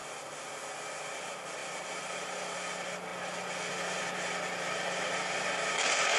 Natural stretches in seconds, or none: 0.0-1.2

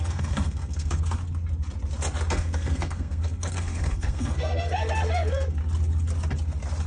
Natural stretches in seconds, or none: 1.2-2.3; 5.6-6.9

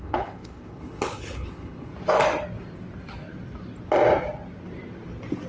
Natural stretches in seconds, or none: 1.9-5.5

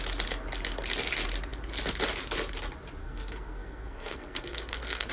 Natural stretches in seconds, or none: 0.0-3.0

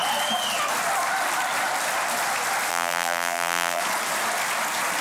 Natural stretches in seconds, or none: 0.0-2.7; 3.8-5.0

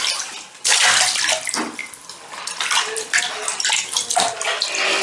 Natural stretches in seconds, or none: 0.0-5.0

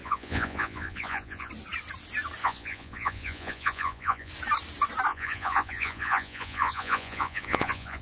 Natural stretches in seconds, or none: 1.5-2.4; 4.3-5.1

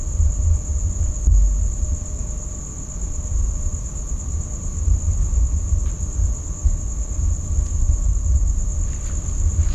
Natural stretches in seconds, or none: 0.0-9.7